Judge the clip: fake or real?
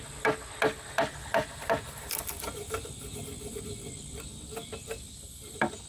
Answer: real